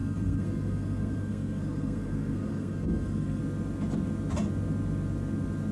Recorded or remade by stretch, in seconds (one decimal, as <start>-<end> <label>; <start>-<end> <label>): 0.0-3.4 remade; 3.4-5.7 recorded